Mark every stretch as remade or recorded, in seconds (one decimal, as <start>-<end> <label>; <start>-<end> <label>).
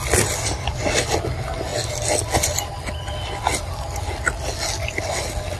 0.0-5.6 recorded